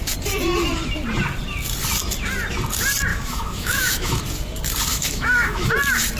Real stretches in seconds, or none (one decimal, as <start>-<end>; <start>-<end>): 0.0-3.1; 4.2-4.9; 5.7-6.2